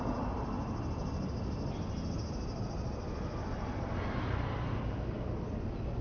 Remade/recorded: recorded